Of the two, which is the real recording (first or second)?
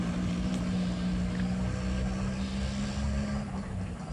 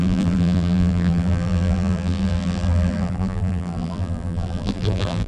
first